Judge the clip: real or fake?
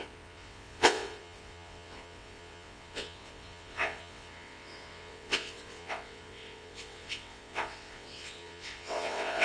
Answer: fake